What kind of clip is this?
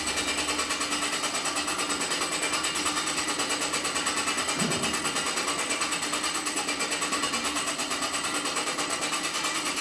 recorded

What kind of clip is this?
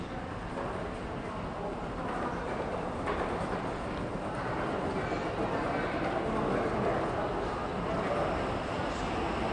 recorded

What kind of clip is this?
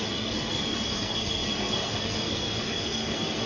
remade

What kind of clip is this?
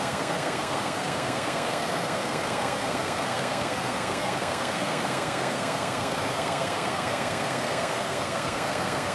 remade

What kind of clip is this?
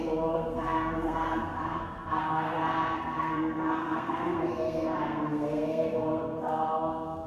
remade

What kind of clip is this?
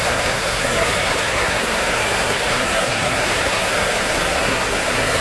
remade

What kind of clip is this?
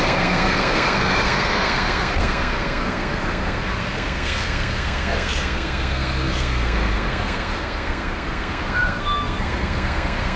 remade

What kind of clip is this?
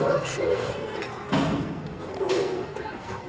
remade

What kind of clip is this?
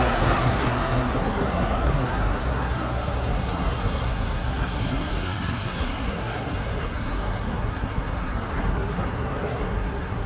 remade